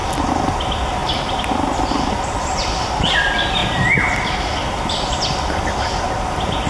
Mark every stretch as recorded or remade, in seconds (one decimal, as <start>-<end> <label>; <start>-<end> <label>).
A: 0.0-1.0 recorded; 1.0-3.2 remade; 3.2-3.6 recorded; 3.6-4.9 remade; 4.9-6.7 recorded

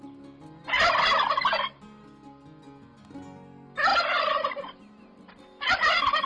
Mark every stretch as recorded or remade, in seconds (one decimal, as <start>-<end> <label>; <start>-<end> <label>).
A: 0.0-6.3 recorded

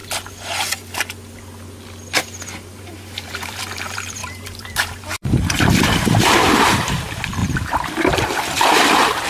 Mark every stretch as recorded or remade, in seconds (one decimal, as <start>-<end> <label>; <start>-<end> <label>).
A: 0.0-2.8 recorded; 2.8-9.3 remade

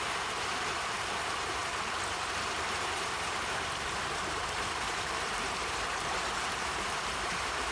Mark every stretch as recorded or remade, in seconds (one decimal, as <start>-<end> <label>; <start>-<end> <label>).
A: 0.0-1.6 remade; 1.6-2.4 recorded; 2.4-7.7 remade

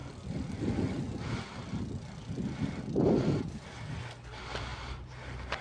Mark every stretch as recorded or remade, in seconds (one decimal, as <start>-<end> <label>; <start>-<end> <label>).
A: 0.0-3.4 recorded; 3.4-4.7 remade; 4.7-5.6 recorded